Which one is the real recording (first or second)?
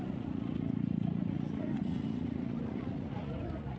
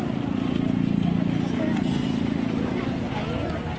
second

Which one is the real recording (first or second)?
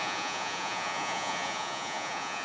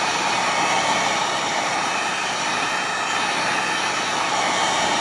second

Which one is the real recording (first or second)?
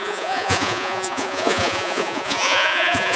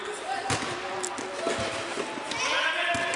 second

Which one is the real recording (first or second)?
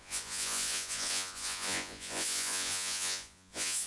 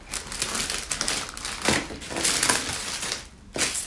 second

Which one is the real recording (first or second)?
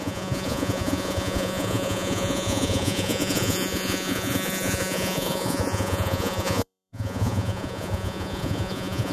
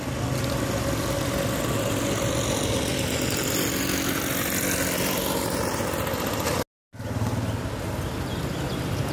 second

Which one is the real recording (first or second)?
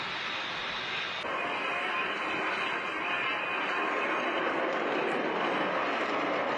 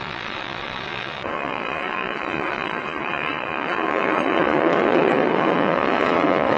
first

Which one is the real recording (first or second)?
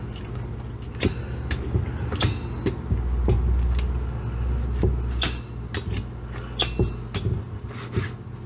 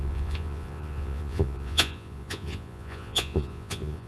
first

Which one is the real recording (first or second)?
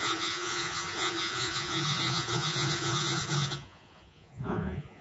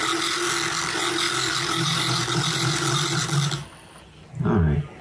second